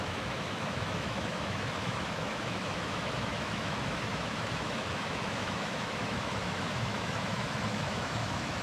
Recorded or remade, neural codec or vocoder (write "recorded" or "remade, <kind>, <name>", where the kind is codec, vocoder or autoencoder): remade, autoencoder, DAC-VAE